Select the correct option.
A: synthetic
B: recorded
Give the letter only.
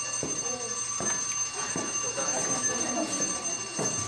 B